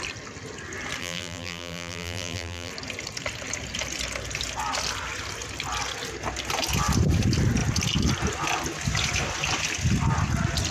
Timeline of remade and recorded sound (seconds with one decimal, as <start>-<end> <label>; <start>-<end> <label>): 0.0-1.0 recorded; 1.0-2.7 remade; 2.7-10.7 recorded

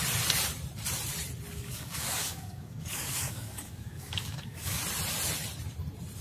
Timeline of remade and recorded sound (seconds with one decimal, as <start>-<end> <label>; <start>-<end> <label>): 0.0-1.5 recorded; 1.5-4.8 remade; 4.8-6.2 recorded

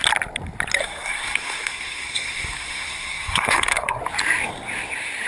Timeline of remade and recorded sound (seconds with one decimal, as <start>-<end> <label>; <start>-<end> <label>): 0.0-0.8 recorded; 0.8-4.0 remade; 4.0-5.3 recorded

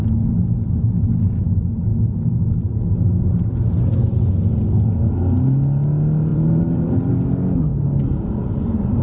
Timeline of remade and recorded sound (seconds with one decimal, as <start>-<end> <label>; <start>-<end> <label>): 0.0-6.3 recorded; 6.3-7.1 remade; 7.1-9.0 recorded

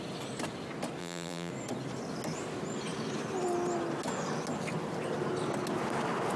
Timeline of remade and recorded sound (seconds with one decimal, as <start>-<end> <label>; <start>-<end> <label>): 0.0-1.0 recorded; 1.0-1.5 remade; 1.5-6.4 recorded

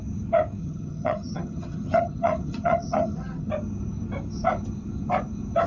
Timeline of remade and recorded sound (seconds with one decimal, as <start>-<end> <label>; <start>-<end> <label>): 0.0-0.6 recorded; 0.6-3.5 remade; 3.5-5.7 recorded